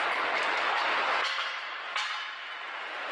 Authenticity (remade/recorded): recorded